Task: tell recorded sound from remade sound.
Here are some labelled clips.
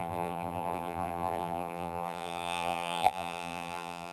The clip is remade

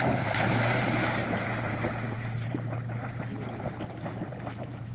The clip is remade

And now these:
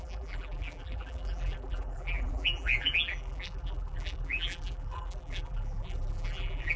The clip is remade